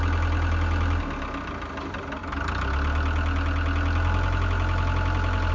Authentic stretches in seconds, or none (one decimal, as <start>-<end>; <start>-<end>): 0.0-5.5